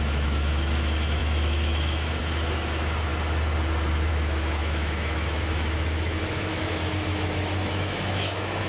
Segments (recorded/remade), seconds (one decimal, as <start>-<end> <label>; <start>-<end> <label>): 0.0-3.1 remade; 3.1-4.1 recorded; 4.1-8.7 remade